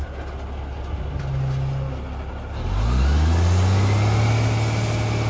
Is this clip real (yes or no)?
yes